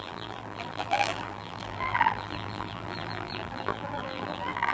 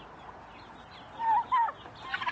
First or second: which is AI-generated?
first